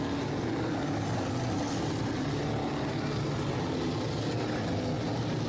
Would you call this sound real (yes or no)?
yes